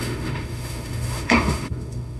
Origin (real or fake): fake